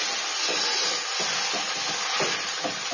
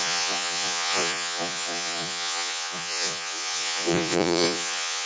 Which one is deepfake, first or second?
second